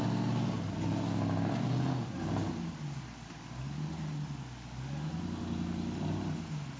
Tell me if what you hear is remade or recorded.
recorded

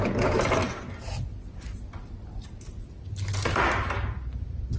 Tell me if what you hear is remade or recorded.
recorded